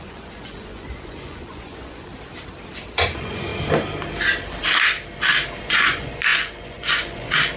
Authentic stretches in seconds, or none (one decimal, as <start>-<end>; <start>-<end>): 2.1-3.1; 3.5-5.6